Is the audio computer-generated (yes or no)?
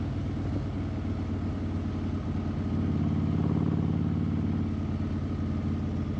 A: no